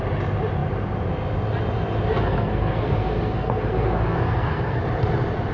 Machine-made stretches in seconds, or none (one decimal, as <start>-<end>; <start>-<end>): 2.1-4.8